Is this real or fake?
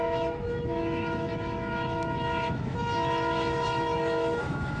fake